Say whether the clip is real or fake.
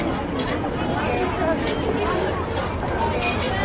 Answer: real